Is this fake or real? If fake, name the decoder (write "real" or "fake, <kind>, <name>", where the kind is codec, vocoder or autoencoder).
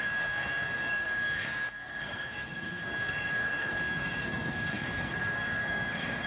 fake, codec, SNAC